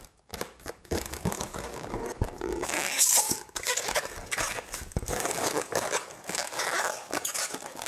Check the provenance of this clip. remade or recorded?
remade